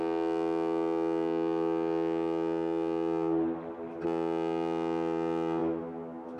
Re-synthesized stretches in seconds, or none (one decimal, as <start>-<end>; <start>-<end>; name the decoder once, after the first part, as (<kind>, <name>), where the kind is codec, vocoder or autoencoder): none